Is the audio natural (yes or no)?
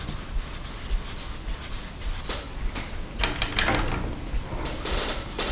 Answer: yes